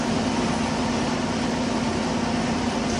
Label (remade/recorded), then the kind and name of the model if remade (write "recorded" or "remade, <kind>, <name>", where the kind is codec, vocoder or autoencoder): recorded